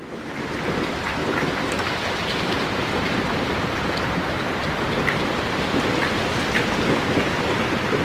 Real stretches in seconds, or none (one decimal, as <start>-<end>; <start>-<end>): 0.0-8.0